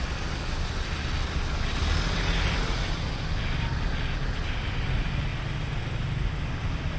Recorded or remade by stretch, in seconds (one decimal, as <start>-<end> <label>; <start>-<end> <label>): 0.0-7.0 recorded